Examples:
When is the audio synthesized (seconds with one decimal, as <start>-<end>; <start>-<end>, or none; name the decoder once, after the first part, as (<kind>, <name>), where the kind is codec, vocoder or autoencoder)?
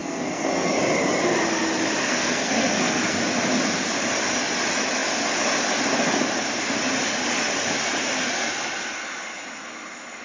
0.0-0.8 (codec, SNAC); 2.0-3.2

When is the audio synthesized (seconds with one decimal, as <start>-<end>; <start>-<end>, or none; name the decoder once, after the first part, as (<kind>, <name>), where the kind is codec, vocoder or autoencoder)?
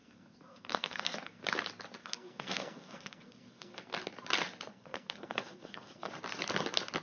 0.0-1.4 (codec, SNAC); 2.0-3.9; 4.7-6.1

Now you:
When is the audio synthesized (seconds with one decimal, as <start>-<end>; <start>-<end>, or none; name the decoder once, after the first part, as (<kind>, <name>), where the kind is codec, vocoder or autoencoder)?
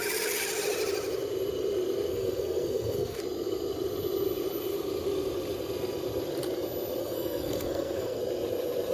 2.1-3.2 (codec, SNAC); 7.0-8.2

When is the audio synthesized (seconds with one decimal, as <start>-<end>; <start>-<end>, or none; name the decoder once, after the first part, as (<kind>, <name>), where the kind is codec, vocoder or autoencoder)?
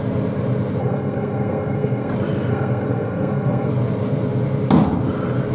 0.8-2.1 (codec, SNAC); 2.5-3.7